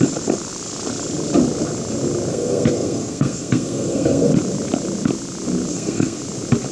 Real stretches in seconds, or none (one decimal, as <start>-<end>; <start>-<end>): 0.0-2.3; 4.3-5.7; 6.2-6.7